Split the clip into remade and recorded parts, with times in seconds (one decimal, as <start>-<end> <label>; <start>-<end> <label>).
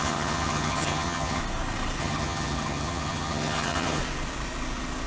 0.0-1.4 remade; 1.4-2.0 recorded; 2.0-4.0 remade; 4.0-5.1 recorded